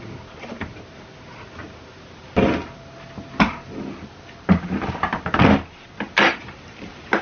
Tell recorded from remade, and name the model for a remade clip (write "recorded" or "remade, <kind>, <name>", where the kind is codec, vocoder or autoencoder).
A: recorded